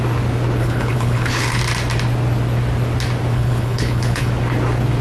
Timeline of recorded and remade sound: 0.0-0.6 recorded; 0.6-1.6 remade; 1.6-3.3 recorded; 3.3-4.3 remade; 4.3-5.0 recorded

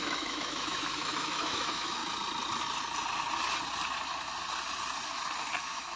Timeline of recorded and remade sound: 0.0-2.0 remade; 2.0-5.6 recorded; 5.6-6.0 remade

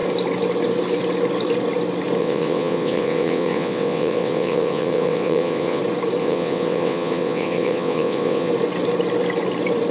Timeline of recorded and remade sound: 0.0-2.2 recorded; 2.2-5.8 remade; 5.8-6.2 recorded; 6.2-8.5 remade; 8.5-9.9 recorded

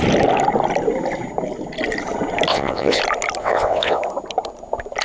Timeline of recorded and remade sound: 0.0-2.5 recorded; 2.5-3.0 remade; 3.0-3.4 recorded; 3.4-4.0 remade; 4.0-5.0 recorded